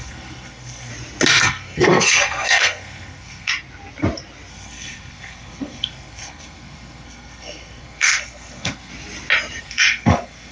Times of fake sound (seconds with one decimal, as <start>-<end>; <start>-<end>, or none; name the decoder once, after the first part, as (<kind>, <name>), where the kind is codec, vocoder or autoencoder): 0.0-0.9 (codec, SNAC); 1.4-3.5; 4.5-8.9; 9.6-10.5